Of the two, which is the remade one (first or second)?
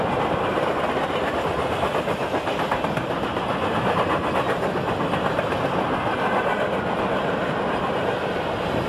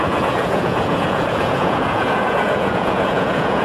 second